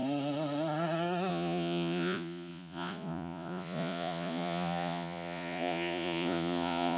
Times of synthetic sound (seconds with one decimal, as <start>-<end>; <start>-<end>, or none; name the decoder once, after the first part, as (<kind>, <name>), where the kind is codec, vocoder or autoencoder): 1.3-7.0 (vocoder, Vocos)